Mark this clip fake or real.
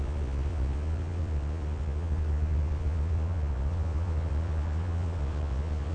fake